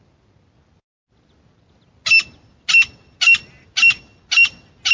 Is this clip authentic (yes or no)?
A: yes